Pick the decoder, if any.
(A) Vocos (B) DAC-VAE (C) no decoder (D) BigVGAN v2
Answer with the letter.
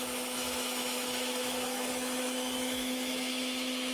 B